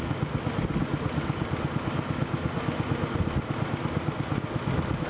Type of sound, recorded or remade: recorded